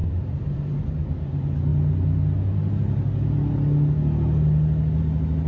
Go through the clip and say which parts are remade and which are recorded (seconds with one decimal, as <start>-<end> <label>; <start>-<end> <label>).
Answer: 0.0-0.8 remade; 0.8-5.5 recorded

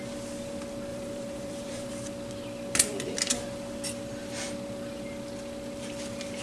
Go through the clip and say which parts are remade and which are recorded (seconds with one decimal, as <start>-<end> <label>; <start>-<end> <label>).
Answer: 0.0-0.9 recorded; 0.9-1.9 remade; 1.9-6.4 recorded